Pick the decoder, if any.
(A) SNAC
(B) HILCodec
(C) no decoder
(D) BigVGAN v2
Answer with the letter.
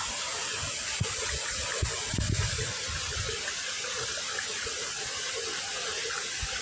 C